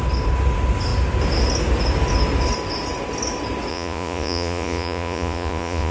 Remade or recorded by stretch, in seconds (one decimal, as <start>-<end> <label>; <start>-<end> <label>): 0.0-3.7 recorded; 3.7-5.9 remade